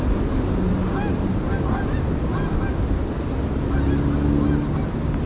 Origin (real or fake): real